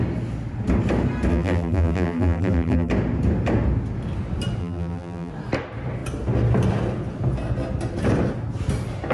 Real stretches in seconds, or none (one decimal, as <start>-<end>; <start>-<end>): 0.0-1.3; 2.9-4.6; 5.3-9.1